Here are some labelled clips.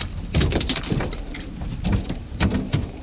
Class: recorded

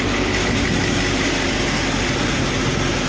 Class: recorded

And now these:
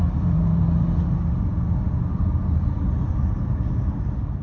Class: recorded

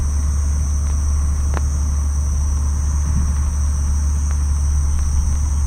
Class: recorded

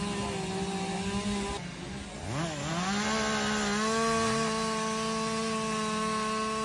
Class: recorded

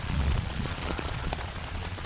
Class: remade